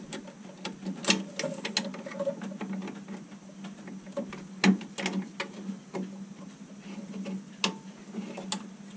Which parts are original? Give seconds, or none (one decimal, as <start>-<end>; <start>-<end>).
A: 0.0-9.0